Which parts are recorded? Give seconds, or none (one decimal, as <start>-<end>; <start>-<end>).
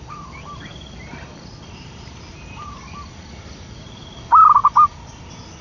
0.0-5.6